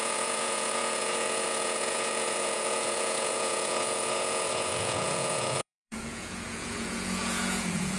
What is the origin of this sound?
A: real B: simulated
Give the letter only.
B